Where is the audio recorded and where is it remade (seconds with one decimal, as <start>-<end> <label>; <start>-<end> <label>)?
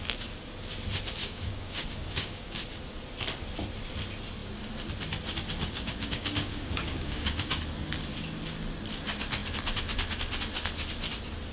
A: 0.0-1.2 recorded; 1.2-2.6 remade; 2.6-5.6 recorded; 5.6-7.5 remade; 7.5-11.5 recorded